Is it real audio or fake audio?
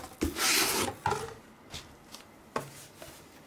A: real